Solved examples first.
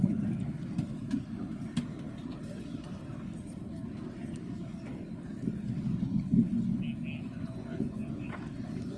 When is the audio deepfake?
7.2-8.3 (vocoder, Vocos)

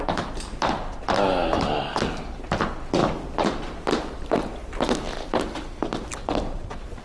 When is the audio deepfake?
4.6-5.4 (vocoder, BigVGAN v2)

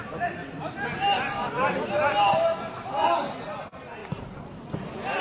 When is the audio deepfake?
none

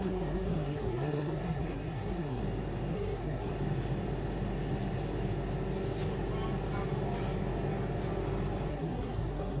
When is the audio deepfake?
0.0-2.4 (codec, SNAC); 2.9-3.5; 8.7-9.6

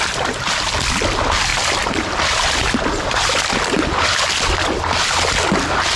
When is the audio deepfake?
none